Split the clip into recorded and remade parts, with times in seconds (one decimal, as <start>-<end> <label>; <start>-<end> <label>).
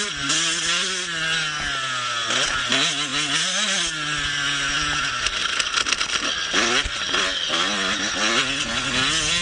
0.0-9.4 recorded